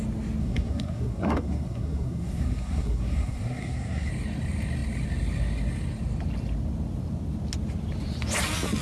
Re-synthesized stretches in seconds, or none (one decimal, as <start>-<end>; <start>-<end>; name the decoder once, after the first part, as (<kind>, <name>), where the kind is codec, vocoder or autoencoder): 0.4-4.1 (codec, SNAC)